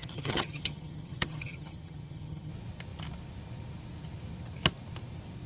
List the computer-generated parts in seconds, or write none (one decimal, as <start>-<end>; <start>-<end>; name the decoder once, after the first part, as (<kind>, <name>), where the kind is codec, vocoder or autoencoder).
0.0-2.5 (vocoder, HiFi-GAN)